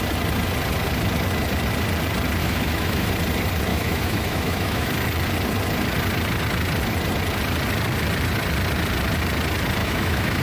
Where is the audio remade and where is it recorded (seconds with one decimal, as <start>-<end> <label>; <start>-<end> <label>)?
0.0-2.4 recorded; 2.4-3.1 remade; 3.1-3.7 recorded; 3.7-4.9 remade; 4.9-9.8 recorded; 9.8-10.4 remade